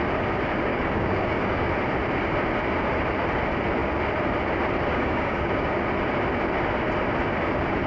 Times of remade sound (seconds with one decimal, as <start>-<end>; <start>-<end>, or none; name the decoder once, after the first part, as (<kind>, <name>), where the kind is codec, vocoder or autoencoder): 0.7-1.7 (codec, DAC); 4.9-5.7